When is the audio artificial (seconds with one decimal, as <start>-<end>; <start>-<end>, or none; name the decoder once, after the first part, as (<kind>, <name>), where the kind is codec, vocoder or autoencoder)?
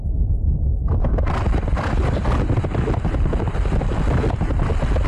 none